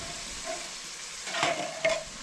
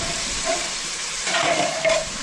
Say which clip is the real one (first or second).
first